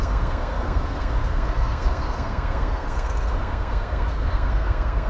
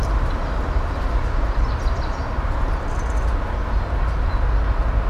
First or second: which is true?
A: second